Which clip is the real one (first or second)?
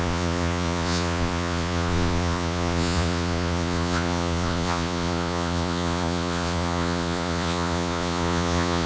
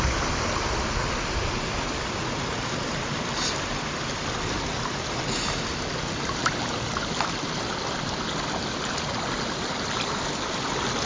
second